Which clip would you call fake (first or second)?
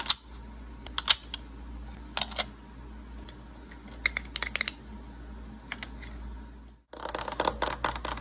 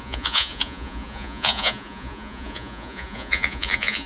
second